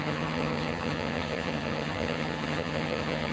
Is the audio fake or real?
fake